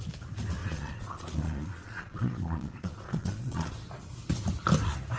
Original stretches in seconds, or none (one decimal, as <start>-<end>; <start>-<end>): 0.0-0.6; 3.7-5.2